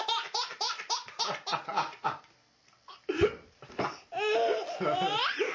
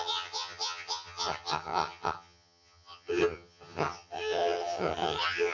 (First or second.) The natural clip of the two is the first